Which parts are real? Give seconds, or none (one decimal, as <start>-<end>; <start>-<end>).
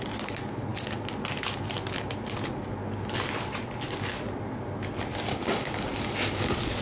0.0-5.3